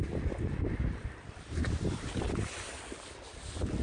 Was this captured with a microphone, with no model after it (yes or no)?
yes